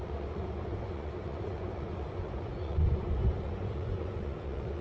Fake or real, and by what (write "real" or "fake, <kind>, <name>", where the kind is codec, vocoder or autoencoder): fake, vocoder, Vocos